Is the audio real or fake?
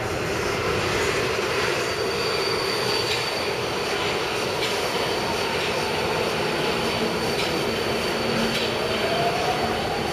real